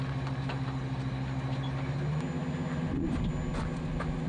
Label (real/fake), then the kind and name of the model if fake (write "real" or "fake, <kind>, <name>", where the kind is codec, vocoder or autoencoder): real